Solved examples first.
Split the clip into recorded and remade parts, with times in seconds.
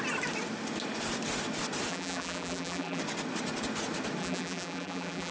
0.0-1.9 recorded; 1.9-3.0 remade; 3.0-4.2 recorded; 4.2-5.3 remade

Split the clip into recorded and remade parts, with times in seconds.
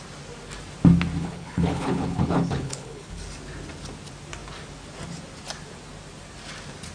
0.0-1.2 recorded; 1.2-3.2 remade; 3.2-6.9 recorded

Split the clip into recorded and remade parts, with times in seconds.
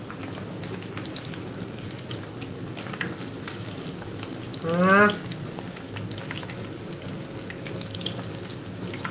0.0-9.1 recorded